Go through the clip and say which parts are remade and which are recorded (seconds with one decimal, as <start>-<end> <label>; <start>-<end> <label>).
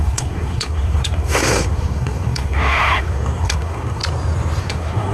0.0-4.0 remade; 4.0-4.6 recorded; 4.6-5.1 remade